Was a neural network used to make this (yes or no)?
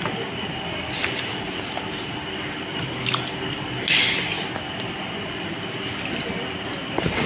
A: no